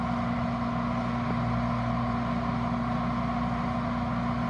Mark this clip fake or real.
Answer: real